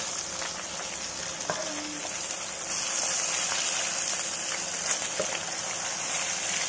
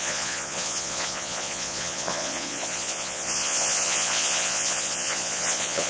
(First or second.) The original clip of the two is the first